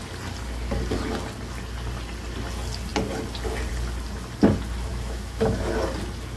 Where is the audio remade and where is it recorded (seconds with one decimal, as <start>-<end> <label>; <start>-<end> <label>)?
0.0-4.9 recorded; 4.9-5.7 remade; 5.7-6.4 recorded